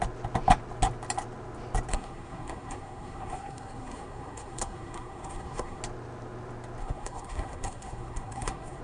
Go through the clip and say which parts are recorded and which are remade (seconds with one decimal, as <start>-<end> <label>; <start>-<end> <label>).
0.0-1.9 recorded; 1.9-5.8 remade; 5.8-6.8 recorded; 6.8-8.8 remade